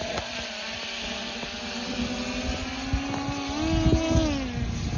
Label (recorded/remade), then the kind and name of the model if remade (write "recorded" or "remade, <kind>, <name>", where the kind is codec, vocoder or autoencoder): recorded